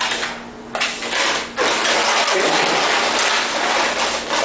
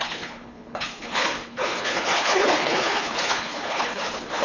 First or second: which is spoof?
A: second